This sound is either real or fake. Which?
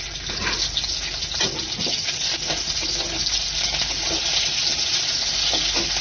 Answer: real